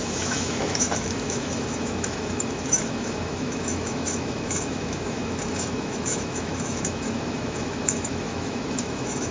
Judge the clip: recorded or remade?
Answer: remade